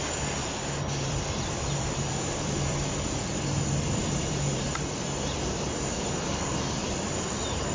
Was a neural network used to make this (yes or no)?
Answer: yes